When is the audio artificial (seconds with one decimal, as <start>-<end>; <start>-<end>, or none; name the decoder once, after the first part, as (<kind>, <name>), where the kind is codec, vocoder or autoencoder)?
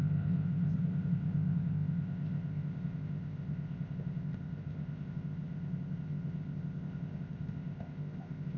0.0-8.6 (codec, ZipCodec)